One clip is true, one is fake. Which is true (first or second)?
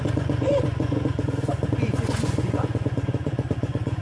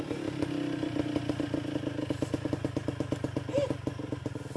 second